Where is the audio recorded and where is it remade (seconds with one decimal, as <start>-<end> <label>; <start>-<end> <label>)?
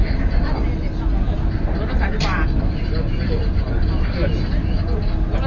0.0-5.5 recorded